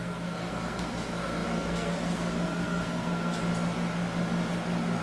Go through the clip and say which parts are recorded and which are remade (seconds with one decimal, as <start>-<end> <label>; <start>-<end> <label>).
0.0-3.4 remade; 3.4-5.0 recorded